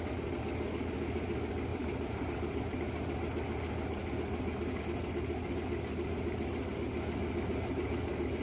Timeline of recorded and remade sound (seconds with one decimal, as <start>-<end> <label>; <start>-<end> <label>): 0.0-1.7 recorded; 1.7-2.6 remade; 2.6-8.4 recorded